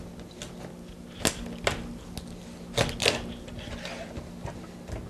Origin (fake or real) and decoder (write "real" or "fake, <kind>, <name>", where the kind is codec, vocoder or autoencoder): real